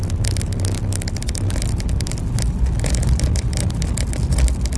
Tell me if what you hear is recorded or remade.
recorded